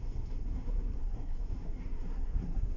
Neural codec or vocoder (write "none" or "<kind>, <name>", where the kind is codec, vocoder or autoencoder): codec, SNAC